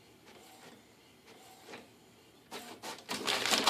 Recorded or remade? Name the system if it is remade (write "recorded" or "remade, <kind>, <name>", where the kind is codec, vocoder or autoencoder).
recorded